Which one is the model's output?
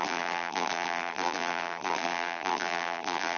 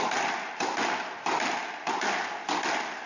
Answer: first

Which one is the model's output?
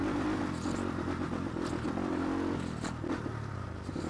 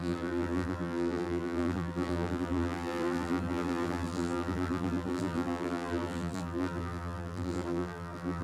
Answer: second